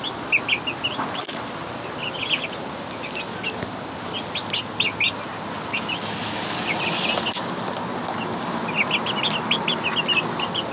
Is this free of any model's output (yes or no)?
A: yes